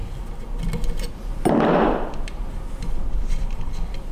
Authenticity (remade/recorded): recorded